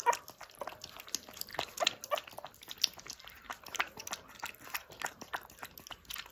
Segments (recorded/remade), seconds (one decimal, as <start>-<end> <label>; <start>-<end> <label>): 0.0-6.3 recorded